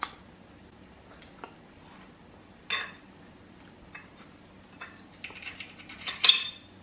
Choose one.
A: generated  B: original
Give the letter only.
B